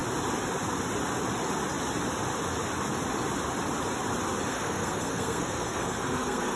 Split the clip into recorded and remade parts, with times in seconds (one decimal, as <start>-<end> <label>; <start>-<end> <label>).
0.0-4.5 recorded; 4.5-6.6 remade